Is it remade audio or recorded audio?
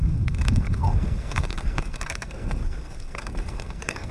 remade